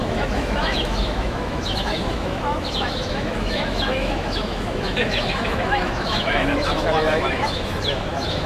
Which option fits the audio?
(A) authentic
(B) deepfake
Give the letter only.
B